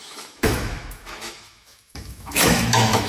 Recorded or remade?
remade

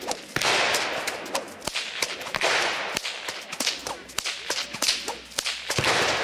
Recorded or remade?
recorded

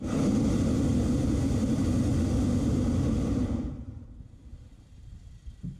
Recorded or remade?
recorded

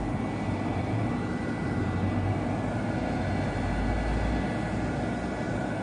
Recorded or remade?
recorded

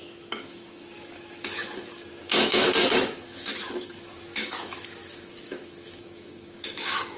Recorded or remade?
remade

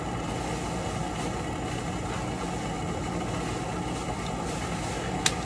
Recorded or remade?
recorded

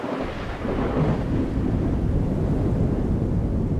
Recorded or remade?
recorded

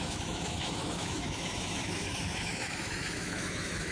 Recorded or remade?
remade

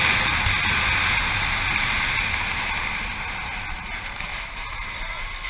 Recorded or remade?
recorded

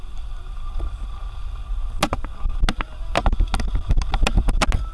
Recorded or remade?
recorded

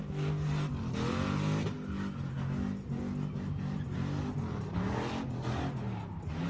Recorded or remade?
recorded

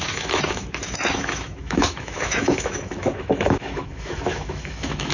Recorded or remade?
remade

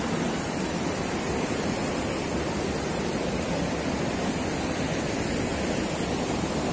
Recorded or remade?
recorded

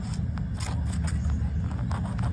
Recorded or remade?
recorded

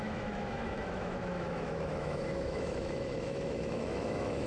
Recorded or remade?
remade